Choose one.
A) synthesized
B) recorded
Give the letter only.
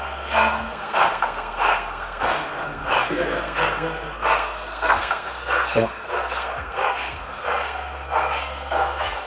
A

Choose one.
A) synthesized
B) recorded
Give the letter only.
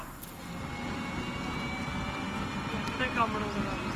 B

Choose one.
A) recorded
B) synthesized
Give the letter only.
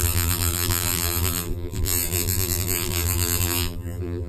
B